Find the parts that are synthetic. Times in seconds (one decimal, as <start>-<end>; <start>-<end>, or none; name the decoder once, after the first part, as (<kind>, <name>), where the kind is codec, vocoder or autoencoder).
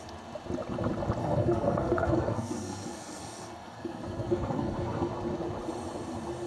1.2-5.1 (codec, SNAC)